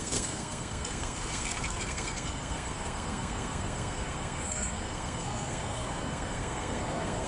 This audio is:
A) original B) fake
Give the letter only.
B